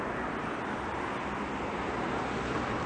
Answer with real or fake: real